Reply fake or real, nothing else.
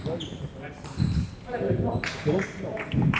real